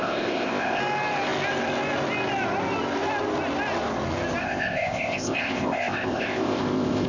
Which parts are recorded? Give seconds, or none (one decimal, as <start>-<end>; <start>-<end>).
0.8-4.4